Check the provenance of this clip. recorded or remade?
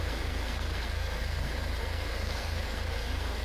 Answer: remade